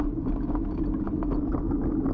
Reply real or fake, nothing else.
real